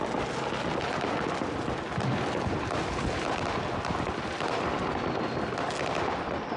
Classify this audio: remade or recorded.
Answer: recorded